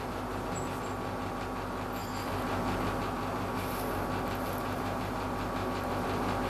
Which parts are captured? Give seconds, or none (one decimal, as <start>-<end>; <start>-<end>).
0.0-6.5